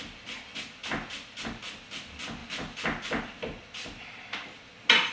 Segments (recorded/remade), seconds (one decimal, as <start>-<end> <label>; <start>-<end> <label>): 0.0-0.8 recorded; 0.8-1.6 remade; 1.6-5.1 recorded